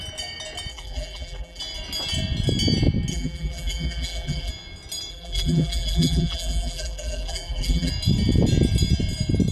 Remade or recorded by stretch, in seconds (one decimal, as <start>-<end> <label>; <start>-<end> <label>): 0.0-0.7 recorded; 0.7-1.6 remade; 1.6-3.1 recorded; 3.1-4.5 remade; 4.5-5.1 recorded; 5.1-7.9 remade; 7.9-9.5 recorded